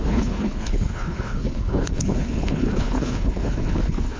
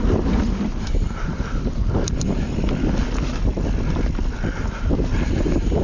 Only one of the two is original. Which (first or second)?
second